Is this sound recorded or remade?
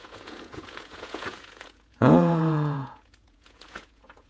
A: remade